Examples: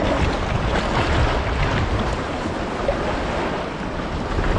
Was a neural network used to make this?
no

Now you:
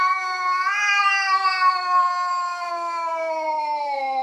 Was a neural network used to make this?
no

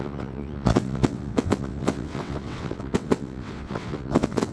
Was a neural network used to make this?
yes